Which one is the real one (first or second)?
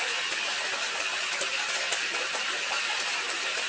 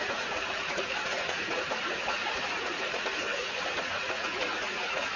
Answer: first